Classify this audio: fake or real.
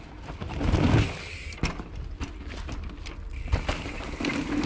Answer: real